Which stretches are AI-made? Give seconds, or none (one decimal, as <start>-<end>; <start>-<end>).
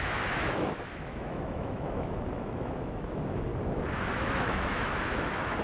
0.0-3.5; 4.1-5.6